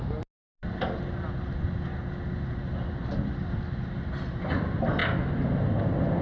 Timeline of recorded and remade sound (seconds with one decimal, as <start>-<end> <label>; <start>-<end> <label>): 0.0-6.2 recorded